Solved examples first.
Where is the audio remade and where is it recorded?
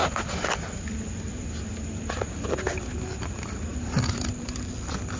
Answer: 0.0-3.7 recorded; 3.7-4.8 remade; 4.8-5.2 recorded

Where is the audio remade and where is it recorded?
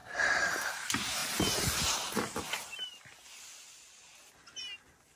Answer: 0.0-0.5 remade; 0.5-5.2 recorded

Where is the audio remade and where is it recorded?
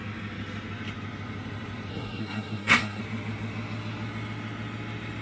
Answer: 0.0-1.9 recorded; 1.9-3.0 remade; 3.0-5.2 recorded